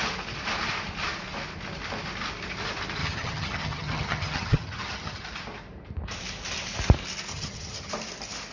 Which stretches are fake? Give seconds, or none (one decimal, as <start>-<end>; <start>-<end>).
3.0-5.2; 7.3-7.9